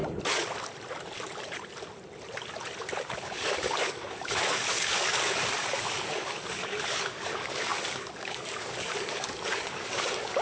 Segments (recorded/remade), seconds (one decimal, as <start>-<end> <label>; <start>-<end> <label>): 0.0-3.0 recorded; 3.0-10.4 remade